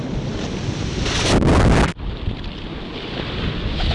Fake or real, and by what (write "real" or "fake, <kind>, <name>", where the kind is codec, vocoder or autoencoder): real